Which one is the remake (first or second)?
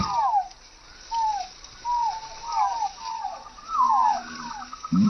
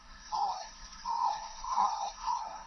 second